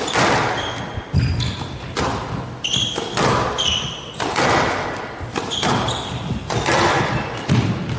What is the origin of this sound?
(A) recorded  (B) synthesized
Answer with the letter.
A